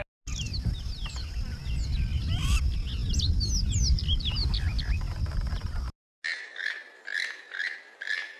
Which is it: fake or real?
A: real